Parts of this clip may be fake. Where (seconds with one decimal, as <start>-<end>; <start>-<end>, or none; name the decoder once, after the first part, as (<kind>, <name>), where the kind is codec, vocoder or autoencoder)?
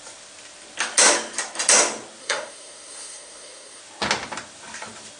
2.2-3.8 (codec, SNAC)